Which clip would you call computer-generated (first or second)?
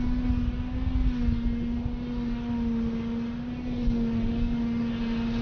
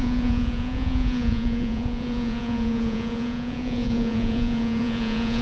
second